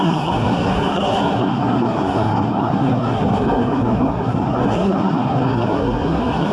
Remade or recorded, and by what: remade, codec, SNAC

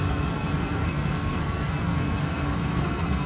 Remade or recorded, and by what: remade, codec, SNAC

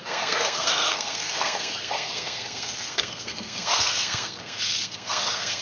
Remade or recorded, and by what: remade, codec, SNAC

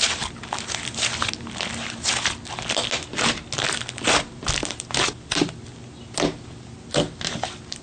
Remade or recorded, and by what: recorded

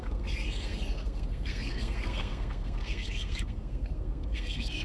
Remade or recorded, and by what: remade, codec, SNAC